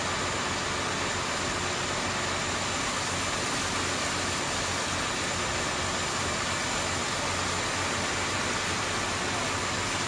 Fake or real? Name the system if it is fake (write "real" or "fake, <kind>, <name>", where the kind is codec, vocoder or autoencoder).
real